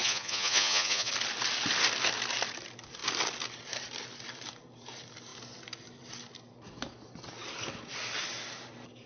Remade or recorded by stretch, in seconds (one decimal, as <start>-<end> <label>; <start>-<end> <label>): 0.0-1.1 remade; 1.1-9.1 recorded